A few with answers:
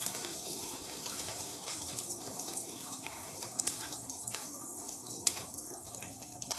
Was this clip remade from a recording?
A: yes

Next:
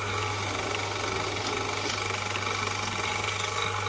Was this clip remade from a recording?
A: no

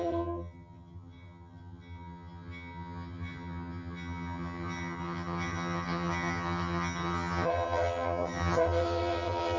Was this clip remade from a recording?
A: yes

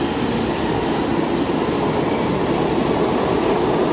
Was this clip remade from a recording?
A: no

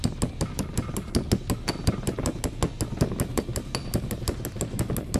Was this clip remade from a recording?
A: no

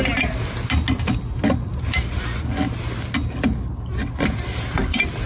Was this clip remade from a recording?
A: no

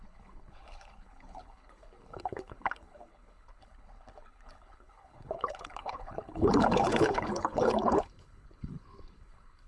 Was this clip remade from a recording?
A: yes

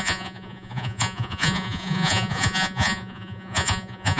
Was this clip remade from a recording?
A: yes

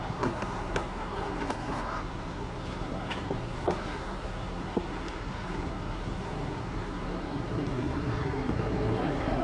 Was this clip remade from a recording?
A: yes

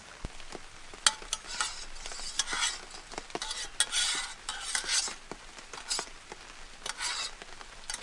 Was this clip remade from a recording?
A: no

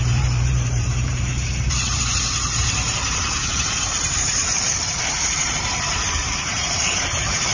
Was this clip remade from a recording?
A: yes